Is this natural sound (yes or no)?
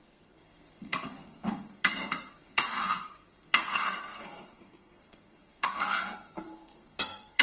no